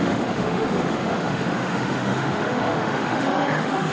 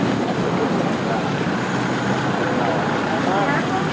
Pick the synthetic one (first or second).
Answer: first